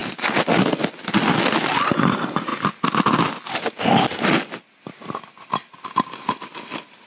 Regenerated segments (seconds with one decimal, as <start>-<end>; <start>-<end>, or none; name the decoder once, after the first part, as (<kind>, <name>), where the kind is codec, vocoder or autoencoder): none